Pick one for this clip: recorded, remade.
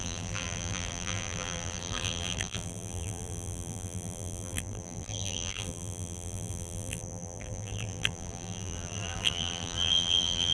remade